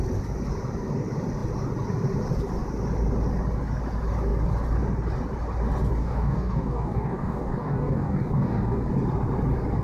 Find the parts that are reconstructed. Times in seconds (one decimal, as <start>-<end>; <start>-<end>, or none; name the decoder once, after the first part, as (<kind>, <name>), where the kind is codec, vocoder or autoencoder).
6.0-8.8 (codec, DAC)